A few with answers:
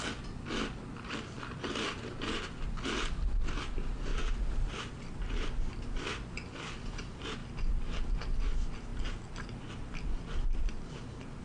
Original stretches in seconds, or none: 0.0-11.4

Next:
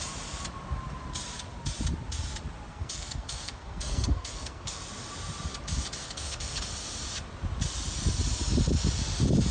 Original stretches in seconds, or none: 0.0-2.7; 4.8-6.0; 6.6-9.5

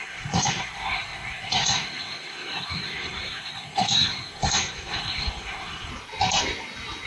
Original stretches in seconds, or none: 5.9-7.1

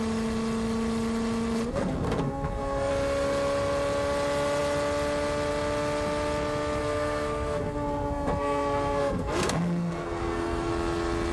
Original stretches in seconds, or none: 0.0-1.7; 2.9-6.8; 10.7-11.3

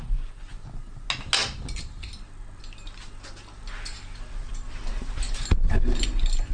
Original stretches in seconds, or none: 0.0-6.5